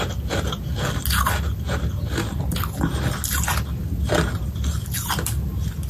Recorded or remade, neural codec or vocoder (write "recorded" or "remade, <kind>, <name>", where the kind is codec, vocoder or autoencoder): recorded